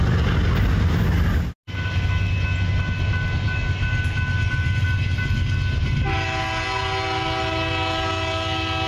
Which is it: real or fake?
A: real